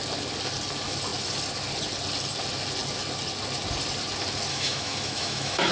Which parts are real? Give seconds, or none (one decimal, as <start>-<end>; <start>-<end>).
0.0-4.5